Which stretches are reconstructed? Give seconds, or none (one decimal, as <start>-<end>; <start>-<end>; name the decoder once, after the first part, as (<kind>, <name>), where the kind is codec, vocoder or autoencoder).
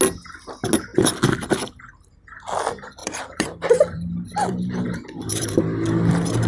3.0-5.6 (vocoder, BigVGAN v2)